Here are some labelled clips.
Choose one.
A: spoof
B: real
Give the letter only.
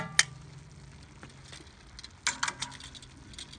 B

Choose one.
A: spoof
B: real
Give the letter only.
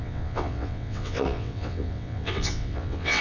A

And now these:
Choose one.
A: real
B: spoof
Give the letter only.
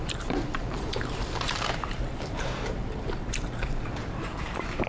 B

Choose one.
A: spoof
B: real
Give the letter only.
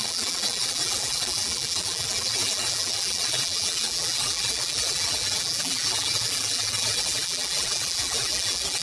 A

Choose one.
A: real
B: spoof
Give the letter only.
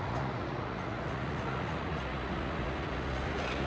B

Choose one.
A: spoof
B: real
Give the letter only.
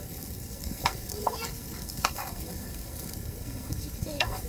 A